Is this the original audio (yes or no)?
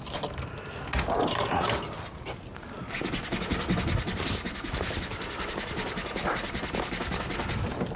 yes